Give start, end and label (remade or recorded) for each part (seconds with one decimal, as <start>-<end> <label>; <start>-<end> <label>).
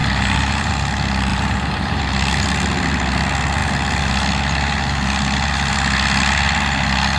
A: 0.0-0.7 remade; 0.7-1.3 recorded; 1.3-2.0 remade; 2.0-7.2 recorded